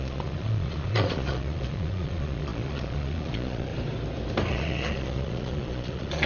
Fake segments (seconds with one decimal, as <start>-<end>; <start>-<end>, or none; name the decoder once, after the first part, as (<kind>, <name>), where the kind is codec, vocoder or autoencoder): 0.0-3.7 (vocoder, Vocos); 4.5-6.3